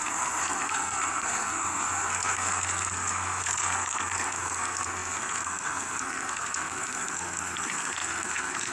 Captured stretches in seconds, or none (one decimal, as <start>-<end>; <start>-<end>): none